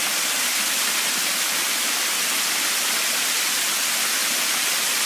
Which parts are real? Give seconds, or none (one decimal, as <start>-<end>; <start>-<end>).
0.0-5.1